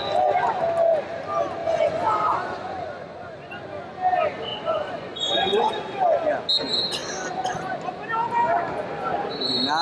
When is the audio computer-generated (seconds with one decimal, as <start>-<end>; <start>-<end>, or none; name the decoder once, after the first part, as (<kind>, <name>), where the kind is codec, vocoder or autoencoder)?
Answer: 1.6-3.5 (vocoder, Vocos); 4.5-5.7